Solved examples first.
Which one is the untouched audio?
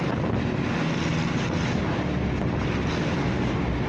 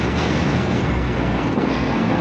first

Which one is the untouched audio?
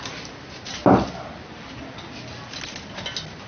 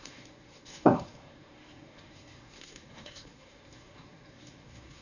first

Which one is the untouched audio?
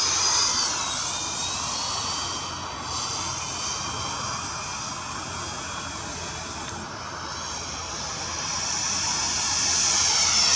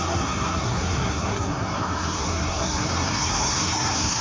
first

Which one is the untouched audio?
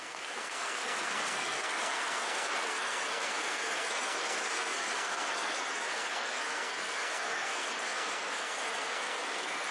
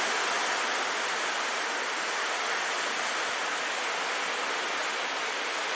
second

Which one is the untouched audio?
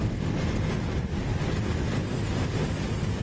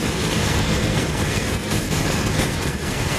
first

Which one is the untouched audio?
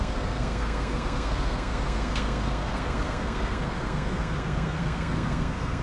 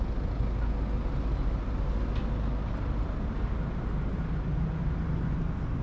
second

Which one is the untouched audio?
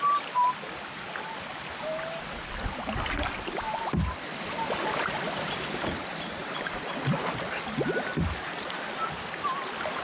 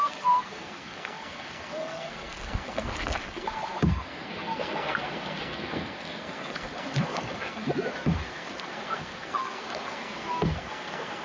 first